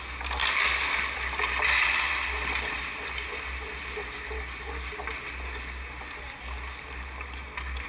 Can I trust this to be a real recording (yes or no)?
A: yes